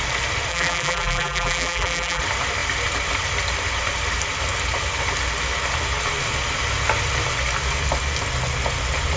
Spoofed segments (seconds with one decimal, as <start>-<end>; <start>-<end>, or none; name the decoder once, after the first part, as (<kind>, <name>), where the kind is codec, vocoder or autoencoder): 0.5-2.2 (vocoder, BigVGAN v2)